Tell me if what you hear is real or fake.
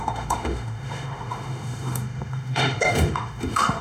fake